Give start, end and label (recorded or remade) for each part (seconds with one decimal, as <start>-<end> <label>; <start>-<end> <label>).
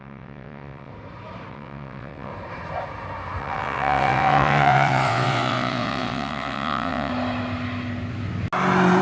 0.0-0.9 remade; 0.9-1.5 recorded; 1.5-2.3 remade; 2.3-3.4 recorded; 3.4-7.1 remade; 7.1-9.0 recorded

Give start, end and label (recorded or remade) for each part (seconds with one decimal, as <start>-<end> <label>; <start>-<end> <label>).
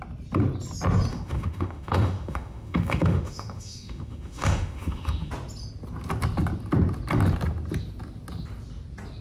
0.0-1.1 recorded; 1.1-5.3 remade; 5.3-9.2 recorded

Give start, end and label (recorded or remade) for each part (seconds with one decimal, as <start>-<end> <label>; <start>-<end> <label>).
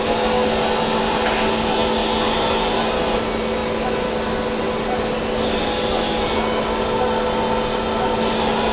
0.0-8.7 recorded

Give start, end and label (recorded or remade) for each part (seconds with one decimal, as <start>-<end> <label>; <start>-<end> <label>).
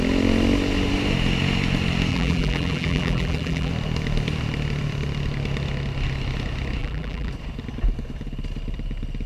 0.0-2.1 recorded; 2.1-3.7 remade; 3.7-6.8 recorded; 6.8-7.3 remade; 7.3-9.3 recorded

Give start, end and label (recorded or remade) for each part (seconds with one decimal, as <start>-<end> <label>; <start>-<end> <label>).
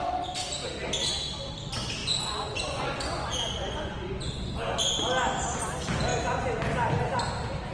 0.0-2.0 recorded; 2.0-4.6 remade; 4.6-7.7 recorded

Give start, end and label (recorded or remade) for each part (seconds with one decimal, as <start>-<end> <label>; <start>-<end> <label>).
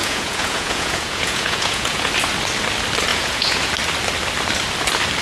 0.0-2.1 remade; 2.1-3.1 recorded; 3.1-3.7 remade; 3.7-5.2 recorded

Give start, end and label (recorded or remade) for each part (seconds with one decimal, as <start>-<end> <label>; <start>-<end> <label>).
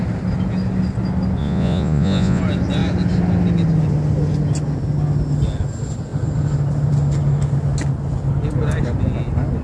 0.0-1.4 recorded; 1.4-2.4 remade; 2.4-9.6 recorded